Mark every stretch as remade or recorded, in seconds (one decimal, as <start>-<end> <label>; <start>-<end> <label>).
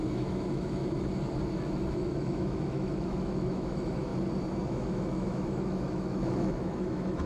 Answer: 0.0-0.8 remade; 0.8-1.5 recorded; 1.5-4.1 remade; 4.1-4.7 recorded; 4.7-7.3 remade